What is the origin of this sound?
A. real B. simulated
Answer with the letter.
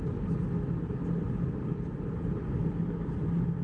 A